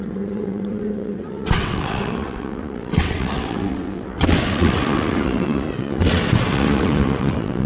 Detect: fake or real fake